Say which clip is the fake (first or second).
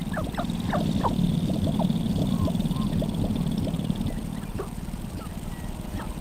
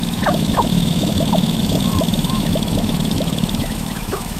second